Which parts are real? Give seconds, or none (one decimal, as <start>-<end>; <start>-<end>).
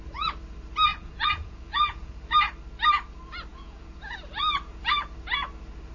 0.0-0.9; 2.1-3.5; 4.5-5.9